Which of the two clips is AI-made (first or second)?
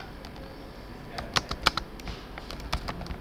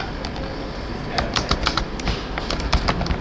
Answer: second